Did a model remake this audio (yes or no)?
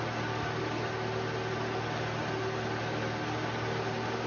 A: no